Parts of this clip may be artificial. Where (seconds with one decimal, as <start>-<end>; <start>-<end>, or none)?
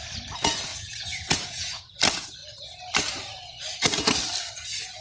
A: 0.7-1.9